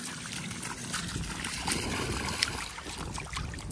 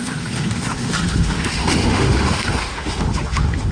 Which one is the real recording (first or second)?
first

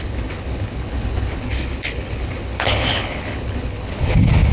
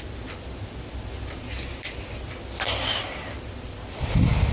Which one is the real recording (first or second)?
second